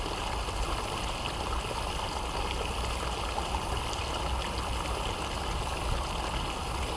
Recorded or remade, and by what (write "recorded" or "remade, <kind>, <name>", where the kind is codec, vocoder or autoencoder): recorded